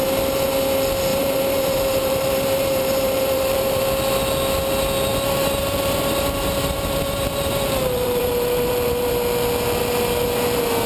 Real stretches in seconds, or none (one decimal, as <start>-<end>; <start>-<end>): 0.0-1.1; 3.8-5.1; 9.1-10.9